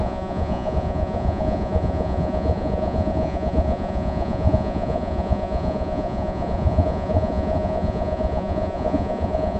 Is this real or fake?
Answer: fake